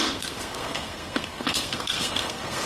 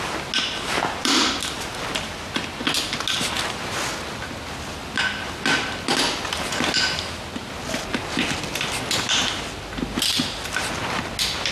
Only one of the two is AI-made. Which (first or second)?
first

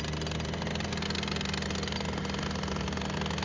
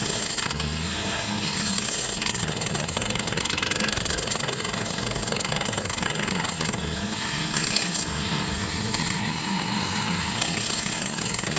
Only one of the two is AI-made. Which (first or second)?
second